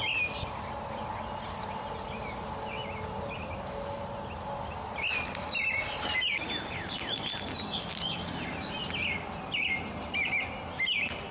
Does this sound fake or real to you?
real